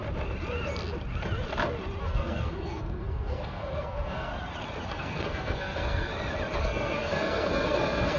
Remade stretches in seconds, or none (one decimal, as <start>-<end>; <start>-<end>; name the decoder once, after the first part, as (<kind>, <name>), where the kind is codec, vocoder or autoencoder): 2.0-4.3 (codec, SNAC); 4.9-6.1; 6.6-8.2

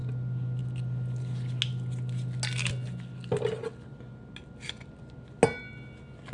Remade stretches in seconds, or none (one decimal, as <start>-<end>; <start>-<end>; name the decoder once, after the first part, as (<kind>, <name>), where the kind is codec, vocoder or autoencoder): none